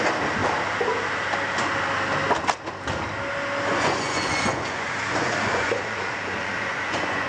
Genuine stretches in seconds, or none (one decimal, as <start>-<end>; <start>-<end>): 0.0-3.7